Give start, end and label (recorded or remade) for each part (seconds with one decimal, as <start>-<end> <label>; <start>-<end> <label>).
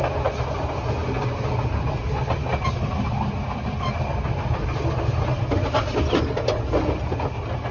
0.0-7.7 recorded